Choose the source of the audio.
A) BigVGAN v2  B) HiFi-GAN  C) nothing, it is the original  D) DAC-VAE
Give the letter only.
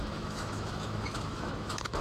D